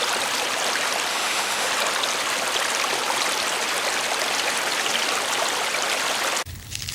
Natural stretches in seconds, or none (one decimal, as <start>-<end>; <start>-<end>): 0.0-1.1; 1.7-6.9